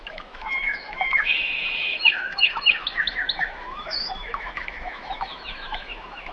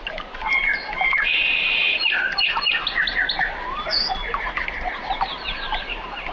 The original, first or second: second